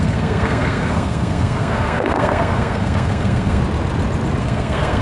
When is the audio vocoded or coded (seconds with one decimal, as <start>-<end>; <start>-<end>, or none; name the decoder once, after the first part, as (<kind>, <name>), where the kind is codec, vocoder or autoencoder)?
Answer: 0.0-3.6 (codec, SNAC); 4.4-5.0